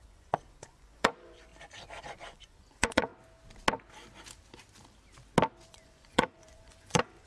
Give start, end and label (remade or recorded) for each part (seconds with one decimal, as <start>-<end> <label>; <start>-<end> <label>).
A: 0.0-1.5 remade; 1.5-2.0 recorded; 2.0-3.1 remade; 3.1-5.7 recorded; 5.7-7.3 remade